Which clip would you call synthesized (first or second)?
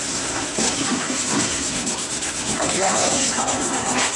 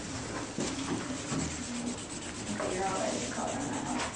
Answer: first